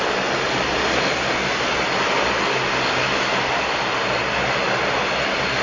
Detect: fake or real real